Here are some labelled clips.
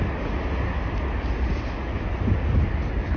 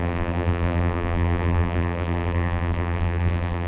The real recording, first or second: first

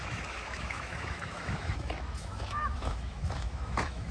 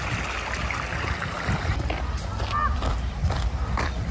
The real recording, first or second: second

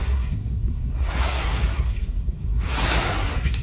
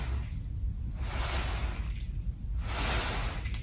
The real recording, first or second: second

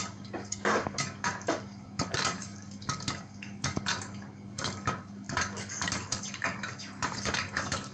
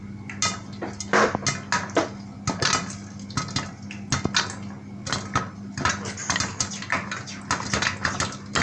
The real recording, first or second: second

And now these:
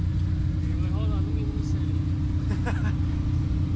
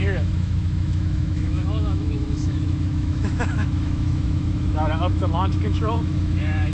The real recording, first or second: first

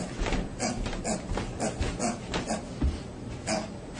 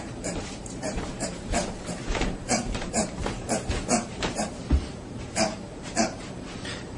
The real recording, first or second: first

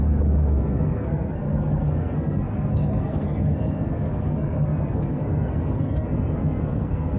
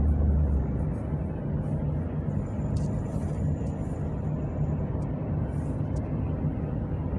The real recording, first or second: second